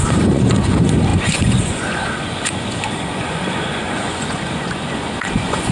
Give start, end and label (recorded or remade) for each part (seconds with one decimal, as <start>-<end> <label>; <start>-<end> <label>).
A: 0.0-5.7 remade